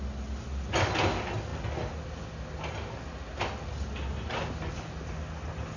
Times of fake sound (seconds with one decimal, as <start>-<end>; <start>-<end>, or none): none